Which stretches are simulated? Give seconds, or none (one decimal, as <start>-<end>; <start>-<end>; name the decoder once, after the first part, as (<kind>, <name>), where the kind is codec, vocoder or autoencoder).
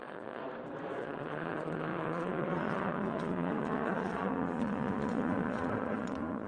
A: 0.0-0.4 (vocoder, Vocos); 1.0-6.5